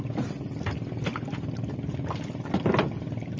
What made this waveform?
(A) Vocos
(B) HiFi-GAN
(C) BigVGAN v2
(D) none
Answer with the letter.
D